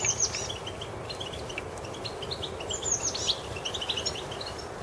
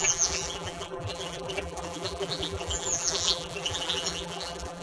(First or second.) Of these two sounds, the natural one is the first